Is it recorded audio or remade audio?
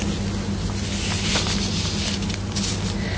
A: recorded